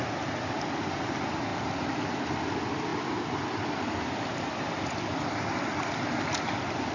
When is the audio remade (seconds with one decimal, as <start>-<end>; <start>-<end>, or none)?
1.5-2.5; 2.9-5.6